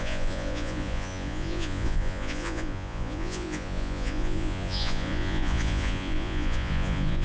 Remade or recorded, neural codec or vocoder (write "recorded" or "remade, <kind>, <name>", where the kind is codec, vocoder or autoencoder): remade, vocoder, Vocos